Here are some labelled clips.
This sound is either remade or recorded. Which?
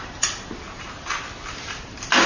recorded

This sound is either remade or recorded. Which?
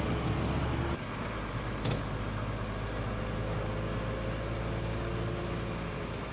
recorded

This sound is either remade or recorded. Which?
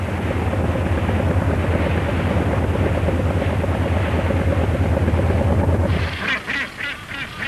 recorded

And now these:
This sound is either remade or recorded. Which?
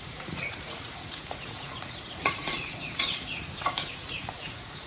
remade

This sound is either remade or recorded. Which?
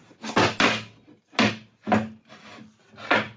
recorded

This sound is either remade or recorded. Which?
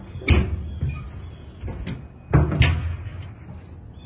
recorded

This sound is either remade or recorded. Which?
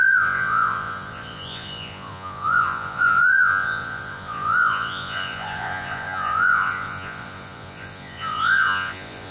remade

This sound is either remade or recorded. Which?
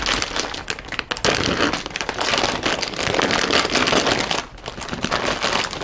recorded